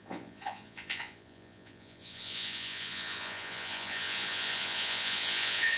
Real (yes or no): no